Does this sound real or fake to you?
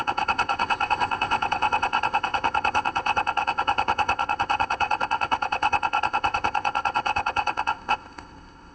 fake